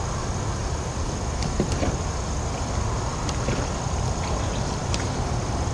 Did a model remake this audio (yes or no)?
no